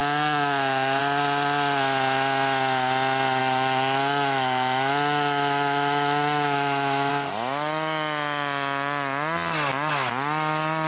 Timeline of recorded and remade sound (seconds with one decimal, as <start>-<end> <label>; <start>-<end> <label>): 0.0-1.0 remade; 1.0-3.4 recorded; 3.4-7.1 remade; 7.1-10.9 recorded